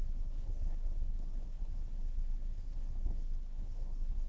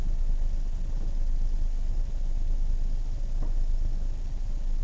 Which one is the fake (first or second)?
first